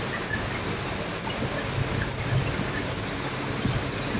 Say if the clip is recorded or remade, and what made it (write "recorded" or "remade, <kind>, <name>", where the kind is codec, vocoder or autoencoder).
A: recorded